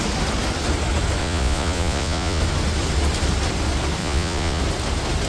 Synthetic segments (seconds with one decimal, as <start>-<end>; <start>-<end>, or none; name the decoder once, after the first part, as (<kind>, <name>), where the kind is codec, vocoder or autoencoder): 1.2-2.4 (vocoder, Vocos); 4.0-4.6